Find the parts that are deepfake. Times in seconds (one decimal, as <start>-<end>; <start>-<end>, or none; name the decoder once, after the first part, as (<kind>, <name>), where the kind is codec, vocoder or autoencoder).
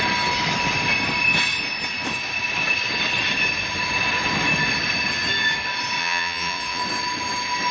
6.0-6.8 (vocoder, Vocos)